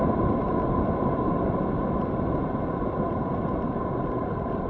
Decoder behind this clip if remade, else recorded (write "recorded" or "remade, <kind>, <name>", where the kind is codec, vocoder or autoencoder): recorded